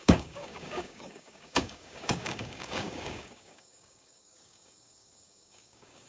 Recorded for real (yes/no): no